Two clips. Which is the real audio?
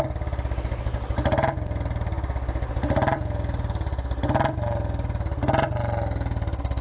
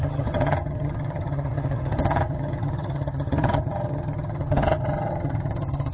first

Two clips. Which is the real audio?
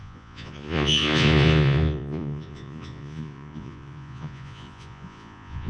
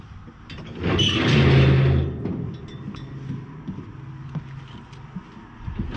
second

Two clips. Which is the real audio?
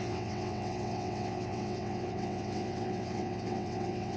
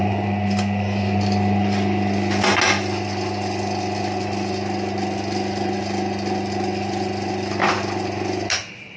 second